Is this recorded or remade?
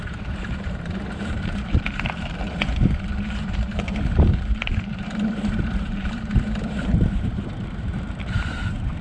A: remade